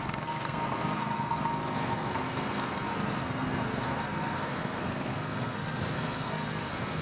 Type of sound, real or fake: fake